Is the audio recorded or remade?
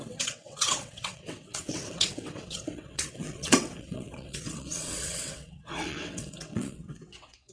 remade